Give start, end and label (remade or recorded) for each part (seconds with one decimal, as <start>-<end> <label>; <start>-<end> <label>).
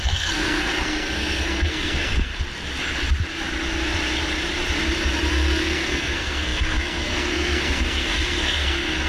0.0-2.3 remade; 2.3-5.3 recorded; 5.3-9.1 remade